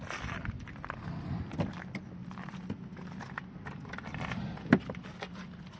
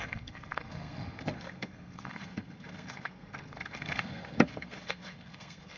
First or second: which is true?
first